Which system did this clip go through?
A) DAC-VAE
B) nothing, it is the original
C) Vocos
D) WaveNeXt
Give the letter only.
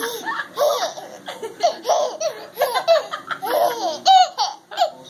B